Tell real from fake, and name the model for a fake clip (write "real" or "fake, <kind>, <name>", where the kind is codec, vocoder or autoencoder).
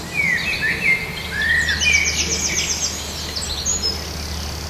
real